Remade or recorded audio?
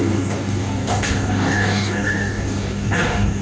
remade